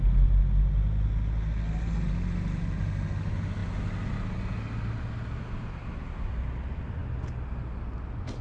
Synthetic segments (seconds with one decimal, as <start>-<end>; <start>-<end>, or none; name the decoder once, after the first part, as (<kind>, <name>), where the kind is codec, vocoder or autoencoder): none